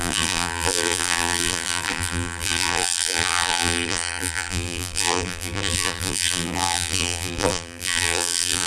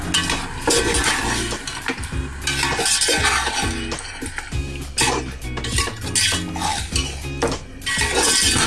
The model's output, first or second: first